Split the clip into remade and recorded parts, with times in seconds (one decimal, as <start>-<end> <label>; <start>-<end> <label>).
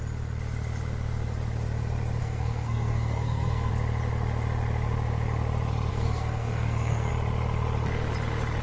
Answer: 0.0-2.2 recorded; 2.2-3.7 remade; 3.7-5.9 recorded; 5.9-7.1 remade; 7.1-8.6 recorded